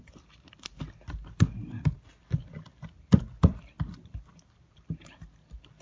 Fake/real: fake